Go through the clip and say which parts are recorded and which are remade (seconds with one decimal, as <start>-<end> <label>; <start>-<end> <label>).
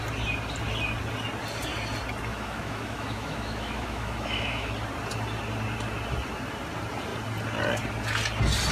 0.0-2.3 recorded; 2.3-4.7 remade; 4.7-8.7 recorded